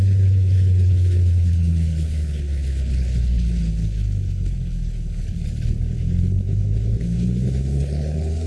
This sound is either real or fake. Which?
fake